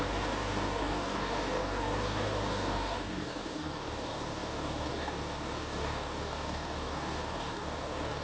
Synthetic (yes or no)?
yes